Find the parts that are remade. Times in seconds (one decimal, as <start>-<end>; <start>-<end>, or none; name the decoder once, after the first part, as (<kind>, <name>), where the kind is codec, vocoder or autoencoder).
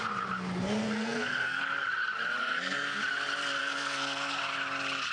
0.8-1.6 (codec, SNAC); 2.4-3.0; 3.6-4.4